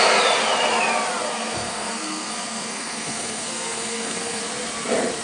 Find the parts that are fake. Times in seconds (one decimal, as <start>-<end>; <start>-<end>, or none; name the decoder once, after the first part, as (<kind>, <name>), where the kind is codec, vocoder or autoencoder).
1.3-4.4 (codec, SNAC)